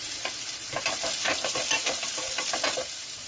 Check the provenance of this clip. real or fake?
fake